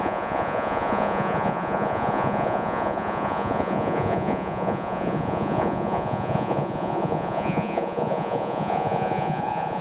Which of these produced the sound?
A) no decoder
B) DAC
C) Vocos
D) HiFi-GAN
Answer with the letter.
C